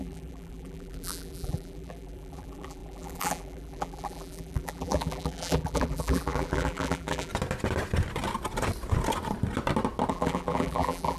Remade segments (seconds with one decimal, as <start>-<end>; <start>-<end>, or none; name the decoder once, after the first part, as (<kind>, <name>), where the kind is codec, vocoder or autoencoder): 0.0-7.3 (vocoder, BigVGAN v2); 10.1-11.2